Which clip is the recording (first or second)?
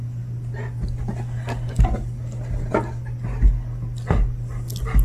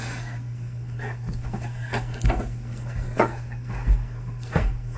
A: first